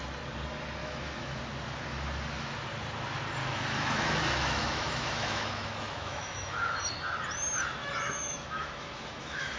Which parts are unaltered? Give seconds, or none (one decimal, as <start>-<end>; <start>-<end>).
0.0-0.8; 1.4-3.4; 6.8-7.8